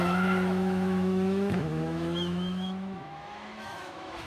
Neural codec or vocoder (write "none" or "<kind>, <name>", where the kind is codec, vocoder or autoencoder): autoencoder, DAC-VAE